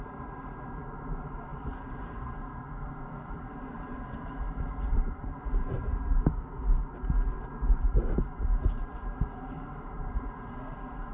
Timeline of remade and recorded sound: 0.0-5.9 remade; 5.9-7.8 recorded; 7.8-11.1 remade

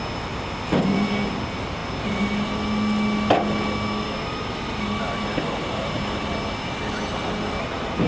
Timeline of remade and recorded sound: 0.0-8.1 recorded